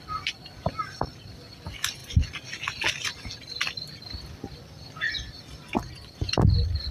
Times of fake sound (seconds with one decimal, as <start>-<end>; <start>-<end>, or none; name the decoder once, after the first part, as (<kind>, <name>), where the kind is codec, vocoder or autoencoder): none